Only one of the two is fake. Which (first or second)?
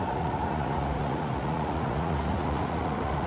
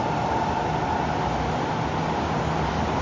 first